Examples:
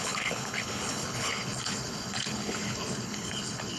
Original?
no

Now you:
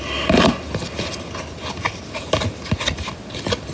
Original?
yes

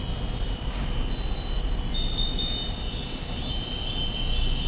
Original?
yes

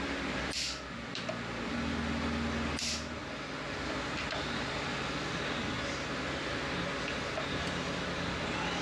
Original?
yes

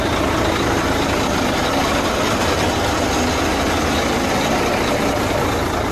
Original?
yes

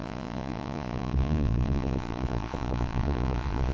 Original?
no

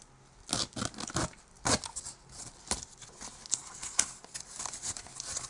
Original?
yes